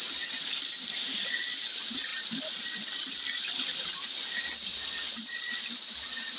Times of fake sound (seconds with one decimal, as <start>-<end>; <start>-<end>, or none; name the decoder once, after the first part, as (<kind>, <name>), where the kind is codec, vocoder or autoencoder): none